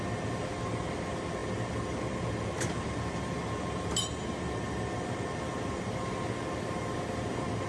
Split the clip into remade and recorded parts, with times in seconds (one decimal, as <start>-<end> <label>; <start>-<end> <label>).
0.0-7.7 recorded